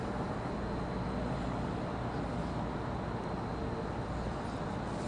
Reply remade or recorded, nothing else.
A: recorded